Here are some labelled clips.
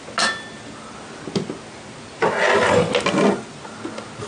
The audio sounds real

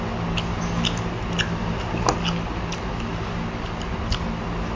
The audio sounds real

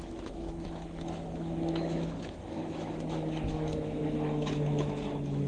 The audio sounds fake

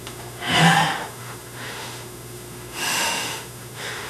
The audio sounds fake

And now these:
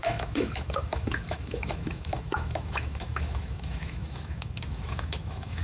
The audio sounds fake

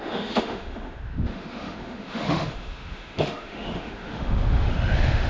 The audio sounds fake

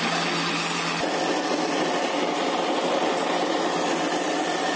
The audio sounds real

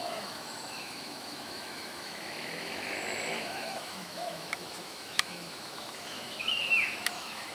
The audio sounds fake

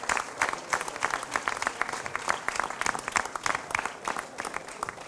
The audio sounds real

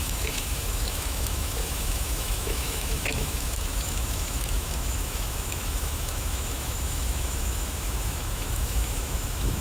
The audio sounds fake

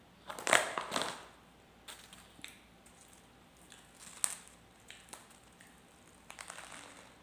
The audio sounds real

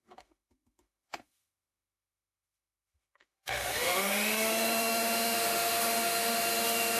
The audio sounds fake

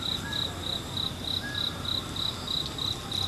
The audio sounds real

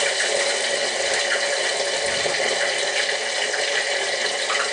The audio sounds real